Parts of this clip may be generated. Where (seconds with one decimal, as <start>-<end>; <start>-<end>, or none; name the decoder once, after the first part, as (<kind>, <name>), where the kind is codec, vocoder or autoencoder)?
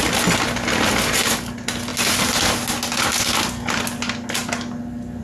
none